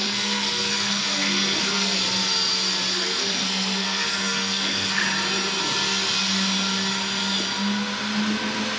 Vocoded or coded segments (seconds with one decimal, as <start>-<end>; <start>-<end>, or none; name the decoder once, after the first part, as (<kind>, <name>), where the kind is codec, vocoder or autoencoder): 0.0-2.0 (codec, SNAC); 2.9-5.0

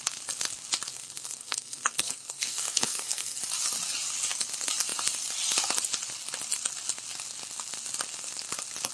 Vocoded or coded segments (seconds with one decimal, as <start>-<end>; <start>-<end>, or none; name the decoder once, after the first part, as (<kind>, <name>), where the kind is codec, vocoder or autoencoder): 0.9-3.4 (codec, SNAC)

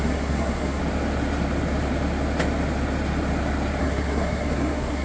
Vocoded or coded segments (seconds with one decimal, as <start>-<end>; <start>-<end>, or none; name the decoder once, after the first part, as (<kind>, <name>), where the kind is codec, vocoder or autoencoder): 0.0-0.8 (codec, SNAC); 3.8-5.0

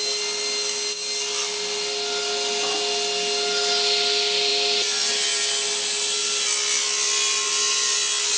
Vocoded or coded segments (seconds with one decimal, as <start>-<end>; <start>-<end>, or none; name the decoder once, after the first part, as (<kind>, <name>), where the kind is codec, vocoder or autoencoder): none

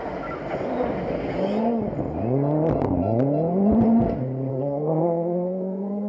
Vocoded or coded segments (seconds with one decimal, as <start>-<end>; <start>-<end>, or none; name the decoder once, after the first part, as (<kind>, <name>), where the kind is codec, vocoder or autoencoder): 4.5-6.1 (codec, SNAC)

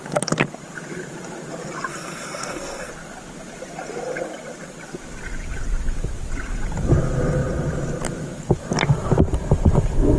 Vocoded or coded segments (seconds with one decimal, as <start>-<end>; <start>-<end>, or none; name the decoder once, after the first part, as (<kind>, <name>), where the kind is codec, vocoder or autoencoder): 1.9-2.9 (codec, SNAC)